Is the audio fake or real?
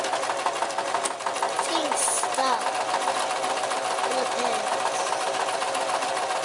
real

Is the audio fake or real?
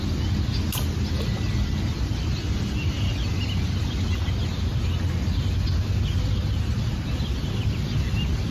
real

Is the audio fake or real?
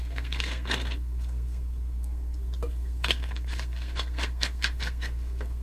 fake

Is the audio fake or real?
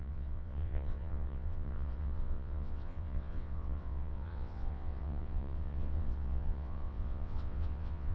fake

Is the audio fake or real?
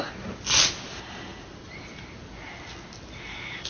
real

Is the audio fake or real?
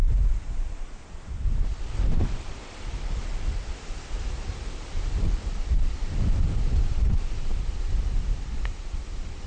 real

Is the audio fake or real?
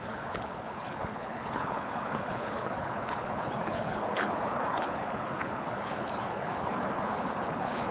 fake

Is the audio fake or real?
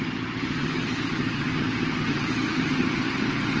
fake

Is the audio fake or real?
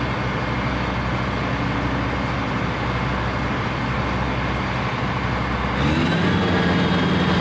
real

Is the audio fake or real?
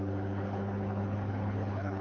fake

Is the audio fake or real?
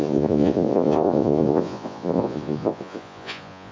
fake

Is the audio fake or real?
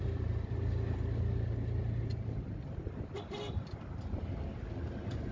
real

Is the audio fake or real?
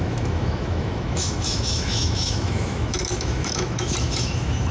fake